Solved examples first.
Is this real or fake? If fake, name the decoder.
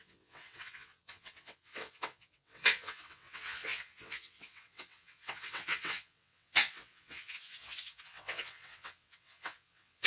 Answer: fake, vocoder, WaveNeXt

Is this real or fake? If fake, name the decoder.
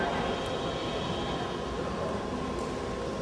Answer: real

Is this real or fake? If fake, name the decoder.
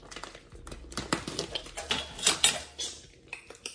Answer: real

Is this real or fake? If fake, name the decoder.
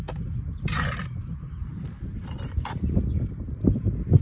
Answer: real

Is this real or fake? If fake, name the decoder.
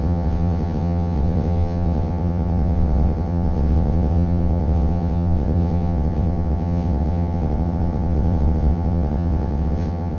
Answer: fake, vocoder, WaveNeXt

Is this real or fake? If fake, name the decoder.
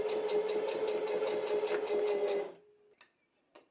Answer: real